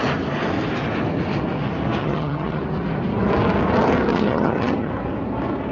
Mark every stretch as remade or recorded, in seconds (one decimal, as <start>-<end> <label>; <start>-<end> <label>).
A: 0.0-2.0 recorded; 2.0-2.6 remade; 2.6-4.1 recorded; 4.1-4.9 remade; 4.9-5.7 recorded